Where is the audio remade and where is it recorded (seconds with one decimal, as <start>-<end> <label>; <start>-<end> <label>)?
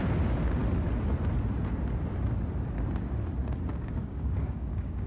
0.0-0.6 remade; 0.6-3.7 recorded; 3.7-5.1 remade